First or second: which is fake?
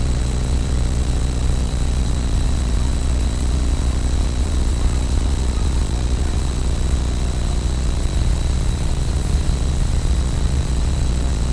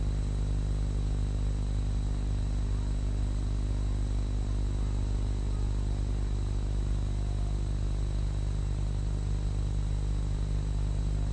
first